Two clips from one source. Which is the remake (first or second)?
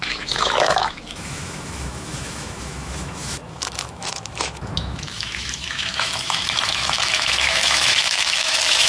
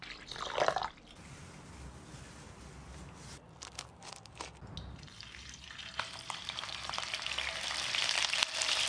first